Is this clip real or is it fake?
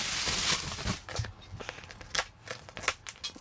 real